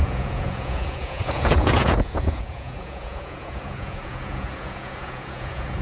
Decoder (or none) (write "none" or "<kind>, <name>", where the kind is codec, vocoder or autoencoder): vocoder, Vocos